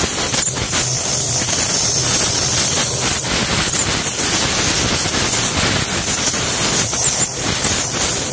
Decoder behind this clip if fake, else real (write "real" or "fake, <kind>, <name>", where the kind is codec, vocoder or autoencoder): real